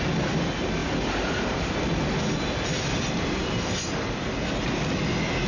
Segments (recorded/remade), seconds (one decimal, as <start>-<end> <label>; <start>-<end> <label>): 0.0-5.5 recorded